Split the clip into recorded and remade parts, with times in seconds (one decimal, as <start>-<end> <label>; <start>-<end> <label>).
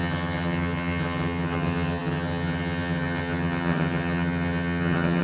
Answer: 0.0-5.2 remade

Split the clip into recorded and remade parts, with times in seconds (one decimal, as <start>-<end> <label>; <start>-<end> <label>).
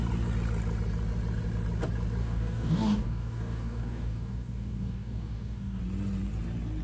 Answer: 0.0-2.2 recorded; 2.2-5.8 remade; 5.8-6.8 recorded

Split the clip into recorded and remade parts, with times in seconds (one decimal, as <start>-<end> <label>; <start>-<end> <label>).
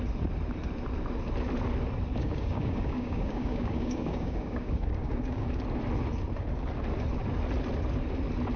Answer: 0.0-2.1 recorded; 2.1-5.6 remade; 5.6-8.6 recorded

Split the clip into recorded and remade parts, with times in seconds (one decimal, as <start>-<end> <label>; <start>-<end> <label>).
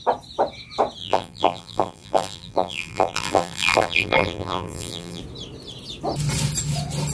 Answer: 0.0-1.0 recorded; 1.0-5.2 remade; 5.2-7.1 recorded